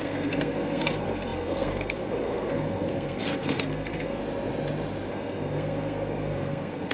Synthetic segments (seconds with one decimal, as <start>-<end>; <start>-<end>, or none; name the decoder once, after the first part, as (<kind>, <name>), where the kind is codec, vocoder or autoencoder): 0.0-4.2 (codec, SNAC); 5.1-6.9